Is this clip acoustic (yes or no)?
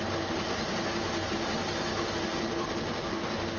yes